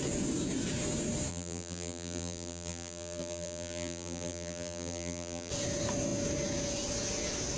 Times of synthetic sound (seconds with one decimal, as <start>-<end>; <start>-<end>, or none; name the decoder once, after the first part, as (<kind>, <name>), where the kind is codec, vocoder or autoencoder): 1.3-5.5 (vocoder, BigVGAN v2)